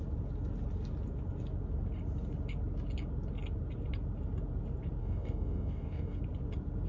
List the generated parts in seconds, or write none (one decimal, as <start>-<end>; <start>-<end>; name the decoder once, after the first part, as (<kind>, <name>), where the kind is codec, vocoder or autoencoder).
5.0-6.2 (codec, DAC)